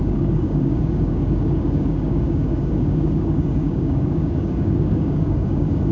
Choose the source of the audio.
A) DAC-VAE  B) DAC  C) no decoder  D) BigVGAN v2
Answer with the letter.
B